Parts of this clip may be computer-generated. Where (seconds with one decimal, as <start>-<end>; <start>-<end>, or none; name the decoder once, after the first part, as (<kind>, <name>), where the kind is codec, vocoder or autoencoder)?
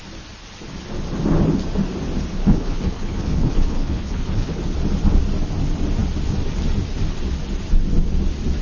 2.4-4.6 (codec, HILCodec)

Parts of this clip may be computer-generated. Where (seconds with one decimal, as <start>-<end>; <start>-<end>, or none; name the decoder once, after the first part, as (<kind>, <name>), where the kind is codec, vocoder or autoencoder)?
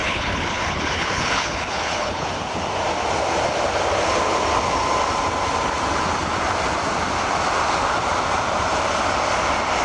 0.0-2.3 (codec, HILCodec)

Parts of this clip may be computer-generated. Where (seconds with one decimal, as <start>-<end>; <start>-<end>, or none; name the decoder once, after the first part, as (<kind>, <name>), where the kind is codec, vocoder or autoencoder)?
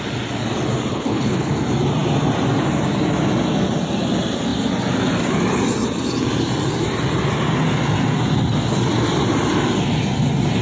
0.9-1.5 (codec, HILCodec)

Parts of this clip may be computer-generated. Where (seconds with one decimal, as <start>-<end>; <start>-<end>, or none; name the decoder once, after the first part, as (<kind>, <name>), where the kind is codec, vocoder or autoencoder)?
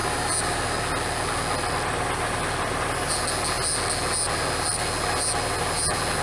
none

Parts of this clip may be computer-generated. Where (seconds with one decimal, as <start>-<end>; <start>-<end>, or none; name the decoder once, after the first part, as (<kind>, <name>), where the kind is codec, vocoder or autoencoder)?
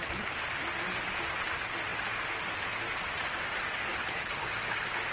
3.9-4.5 (codec, HILCodec)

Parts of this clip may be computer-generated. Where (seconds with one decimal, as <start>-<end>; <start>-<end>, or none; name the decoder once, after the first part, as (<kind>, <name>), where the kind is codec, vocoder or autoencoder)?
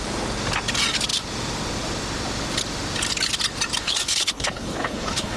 3.8-5.4 (codec, HILCodec)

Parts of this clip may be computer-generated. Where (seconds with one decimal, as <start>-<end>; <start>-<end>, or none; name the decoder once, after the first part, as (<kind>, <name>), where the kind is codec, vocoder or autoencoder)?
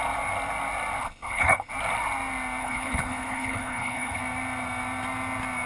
1.0-1.7 (codec, HILCodec); 2.6-4.2